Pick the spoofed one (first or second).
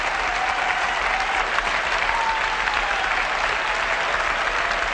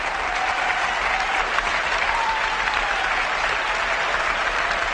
second